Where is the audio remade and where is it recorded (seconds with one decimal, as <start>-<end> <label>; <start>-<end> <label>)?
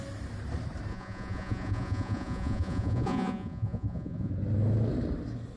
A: 0.0-0.9 recorded; 0.9-4.3 remade; 4.3-5.6 recorded